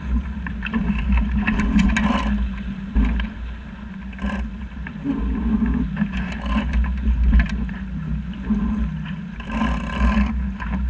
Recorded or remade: recorded